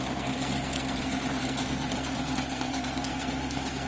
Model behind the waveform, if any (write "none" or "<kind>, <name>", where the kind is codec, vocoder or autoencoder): codec, SNAC